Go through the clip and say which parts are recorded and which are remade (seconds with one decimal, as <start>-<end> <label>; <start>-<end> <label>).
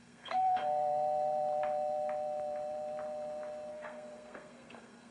0.0-0.6 remade; 0.6-3.7 recorded; 3.7-5.1 remade